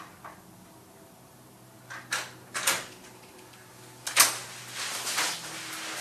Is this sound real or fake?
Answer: real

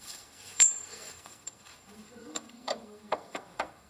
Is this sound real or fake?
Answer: fake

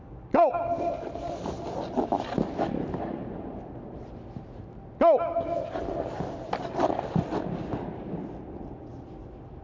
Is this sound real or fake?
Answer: real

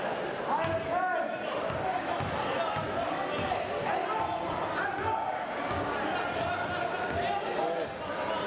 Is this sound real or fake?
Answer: real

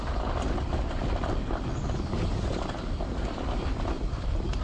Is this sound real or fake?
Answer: real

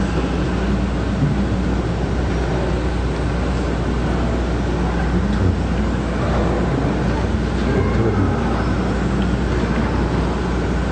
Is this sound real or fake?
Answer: real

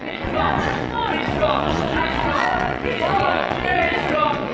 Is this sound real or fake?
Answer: fake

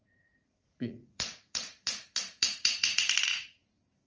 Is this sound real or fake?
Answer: fake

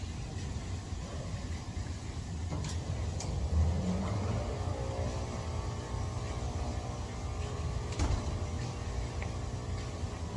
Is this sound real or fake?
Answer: real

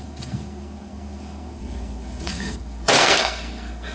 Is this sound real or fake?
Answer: fake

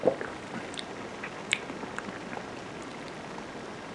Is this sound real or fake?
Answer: real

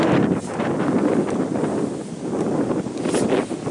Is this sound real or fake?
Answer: real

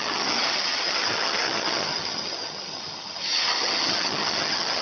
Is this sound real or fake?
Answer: fake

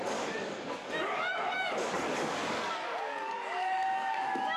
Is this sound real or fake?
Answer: fake